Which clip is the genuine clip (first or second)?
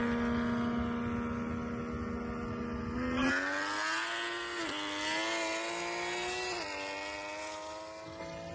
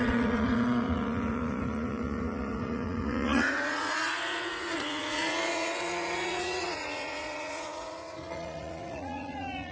first